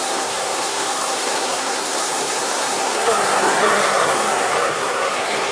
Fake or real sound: fake